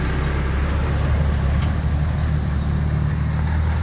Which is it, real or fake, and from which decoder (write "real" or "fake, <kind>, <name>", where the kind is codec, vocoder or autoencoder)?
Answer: real